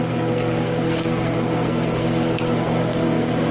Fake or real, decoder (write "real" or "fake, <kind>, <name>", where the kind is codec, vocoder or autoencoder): fake, codec, SNAC